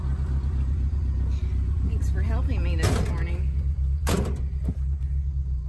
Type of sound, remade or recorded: recorded